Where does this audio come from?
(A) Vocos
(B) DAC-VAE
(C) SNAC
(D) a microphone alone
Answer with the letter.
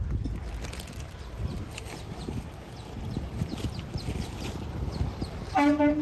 D